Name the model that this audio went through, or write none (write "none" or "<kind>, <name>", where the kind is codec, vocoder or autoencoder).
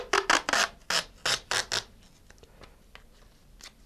none